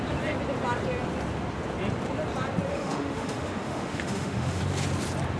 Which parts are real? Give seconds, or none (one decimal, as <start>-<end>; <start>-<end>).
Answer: 0.0-2.7; 4.6-5.4

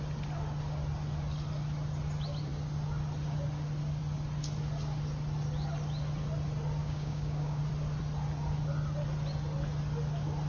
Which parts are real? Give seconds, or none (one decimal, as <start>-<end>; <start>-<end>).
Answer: 0.0-6.8; 7.6-10.5

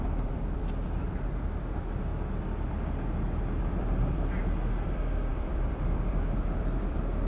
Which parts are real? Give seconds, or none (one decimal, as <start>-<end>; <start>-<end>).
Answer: 2.1-3.6

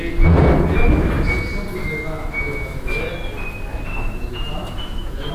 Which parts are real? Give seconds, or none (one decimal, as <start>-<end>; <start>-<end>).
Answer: 0.0-1.8; 3.0-3.9

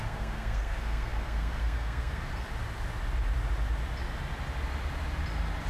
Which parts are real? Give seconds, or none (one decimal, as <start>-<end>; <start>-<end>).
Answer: 2.2-5.7

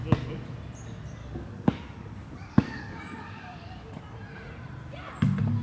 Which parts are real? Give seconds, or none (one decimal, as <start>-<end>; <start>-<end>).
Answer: 0.0-1.2; 3.9-5.6

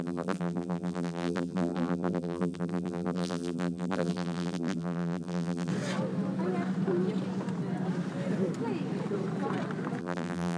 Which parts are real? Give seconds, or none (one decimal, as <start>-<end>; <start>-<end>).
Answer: 5.7-10.0